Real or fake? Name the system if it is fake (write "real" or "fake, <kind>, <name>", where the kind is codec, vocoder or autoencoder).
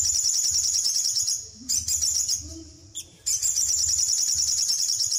fake, vocoder, BigVGAN v2